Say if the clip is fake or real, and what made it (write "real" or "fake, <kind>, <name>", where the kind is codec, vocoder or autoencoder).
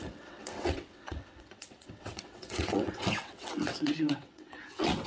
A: fake, vocoder, WaveNeXt